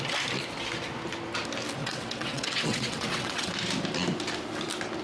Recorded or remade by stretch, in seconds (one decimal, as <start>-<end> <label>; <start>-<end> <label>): 0.0-1.8 recorded; 1.8-3.5 remade; 3.5-5.0 recorded